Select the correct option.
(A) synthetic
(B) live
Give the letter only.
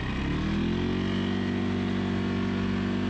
B